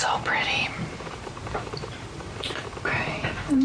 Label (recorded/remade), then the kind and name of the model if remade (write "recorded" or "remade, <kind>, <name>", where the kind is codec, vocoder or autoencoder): remade, vocoder, BigVGAN v2